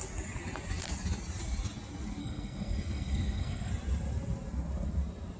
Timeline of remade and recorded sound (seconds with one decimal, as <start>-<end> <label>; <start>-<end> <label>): 0.0-2.2 recorded; 2.2-3.7 remade; 3.7-5.4 recorded